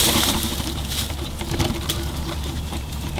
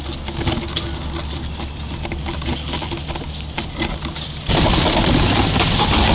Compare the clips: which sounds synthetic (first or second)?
first